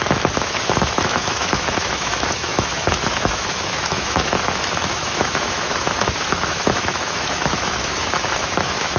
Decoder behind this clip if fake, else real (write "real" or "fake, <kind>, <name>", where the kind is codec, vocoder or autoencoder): fake, autoencoder, DAC-VAE